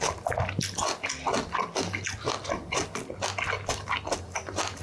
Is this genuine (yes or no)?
yes